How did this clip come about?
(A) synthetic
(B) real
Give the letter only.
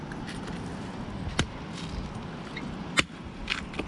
B